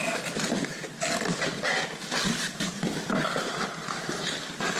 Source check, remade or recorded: remade